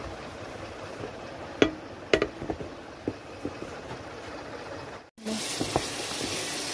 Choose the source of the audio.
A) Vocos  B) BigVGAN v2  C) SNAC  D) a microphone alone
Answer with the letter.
D